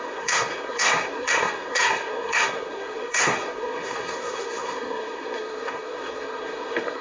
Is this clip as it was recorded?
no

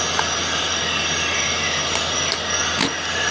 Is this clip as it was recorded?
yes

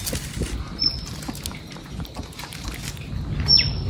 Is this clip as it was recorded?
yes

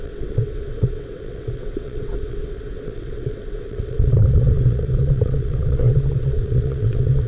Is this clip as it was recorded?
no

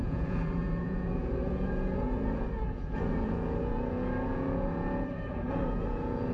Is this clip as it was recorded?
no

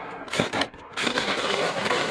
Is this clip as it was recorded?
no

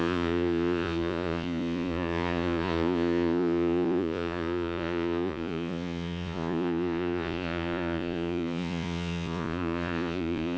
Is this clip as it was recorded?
no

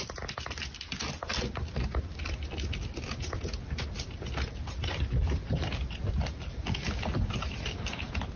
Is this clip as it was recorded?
yes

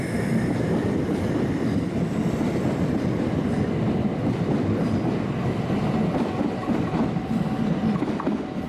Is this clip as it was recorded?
yes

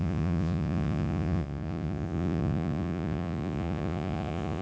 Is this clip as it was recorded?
no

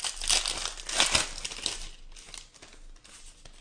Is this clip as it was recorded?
yes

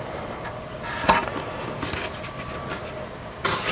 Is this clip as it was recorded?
yes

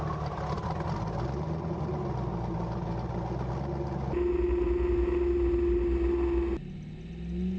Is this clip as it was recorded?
yes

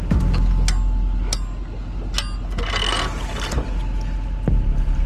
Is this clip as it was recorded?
yes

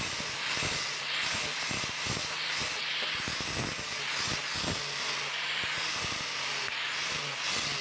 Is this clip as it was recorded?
yes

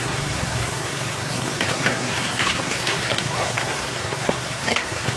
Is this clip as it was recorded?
no